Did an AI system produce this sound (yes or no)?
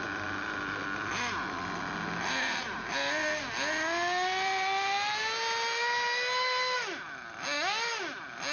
no